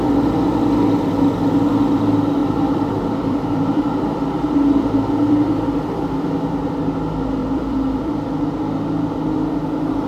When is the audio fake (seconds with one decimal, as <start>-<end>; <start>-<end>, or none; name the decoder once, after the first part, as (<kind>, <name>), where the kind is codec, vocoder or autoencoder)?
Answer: 2.4-6.7 (vocoder, BigVGAN v2); 7.4-8.4